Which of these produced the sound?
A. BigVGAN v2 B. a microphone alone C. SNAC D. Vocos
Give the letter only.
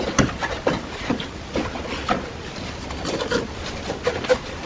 B